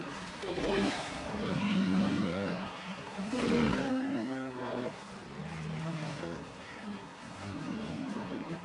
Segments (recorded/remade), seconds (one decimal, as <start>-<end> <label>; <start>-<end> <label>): 0.0-3.4 remade; 3.4-3.9 recorded; 3.9-5.1 remade; 5.1-5.8 recorded; 5.8-8.6 remade